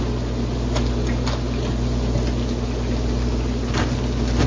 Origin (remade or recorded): recorded